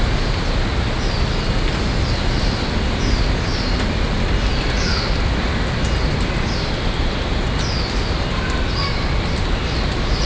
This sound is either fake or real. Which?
real